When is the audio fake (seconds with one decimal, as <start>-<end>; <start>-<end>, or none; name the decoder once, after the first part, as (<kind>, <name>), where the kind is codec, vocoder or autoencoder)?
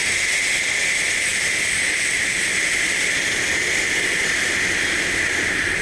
none